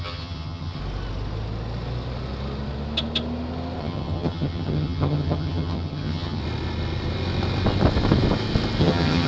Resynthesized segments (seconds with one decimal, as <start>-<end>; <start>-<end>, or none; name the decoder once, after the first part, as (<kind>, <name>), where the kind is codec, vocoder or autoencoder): 0.0-0.8 (vocoder, HiFi-GAN); 3.8-6.4; 8.8-9.3